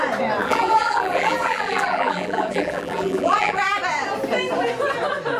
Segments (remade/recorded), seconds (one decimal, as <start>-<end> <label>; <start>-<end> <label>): 0.0-0.4 recorded; 0.4-3.6 remade; 3.6-5.4 recorded